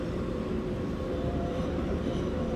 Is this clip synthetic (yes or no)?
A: yes